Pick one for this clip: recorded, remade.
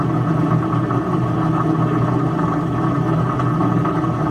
recorded